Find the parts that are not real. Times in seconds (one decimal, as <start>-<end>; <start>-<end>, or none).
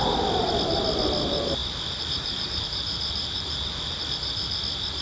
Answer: 1.6-4.6